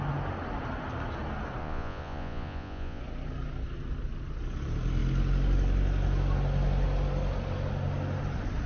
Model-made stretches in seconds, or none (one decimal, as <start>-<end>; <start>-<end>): 1.6-3.0

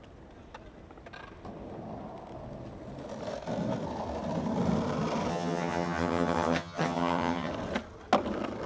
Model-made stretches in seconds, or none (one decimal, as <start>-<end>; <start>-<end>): 5.3-7.5